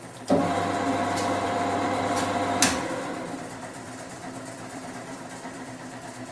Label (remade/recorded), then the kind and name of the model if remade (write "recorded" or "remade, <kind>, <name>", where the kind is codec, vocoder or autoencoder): remade, vocoder, BigVGAN v2